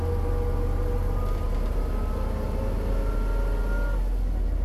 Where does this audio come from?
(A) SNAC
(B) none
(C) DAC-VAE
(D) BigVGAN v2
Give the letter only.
B